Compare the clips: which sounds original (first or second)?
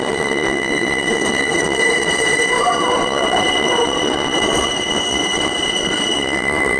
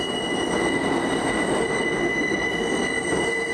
second